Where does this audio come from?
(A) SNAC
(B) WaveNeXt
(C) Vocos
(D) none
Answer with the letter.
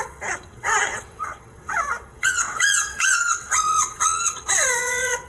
B